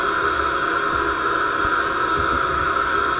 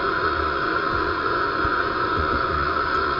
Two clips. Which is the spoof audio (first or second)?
second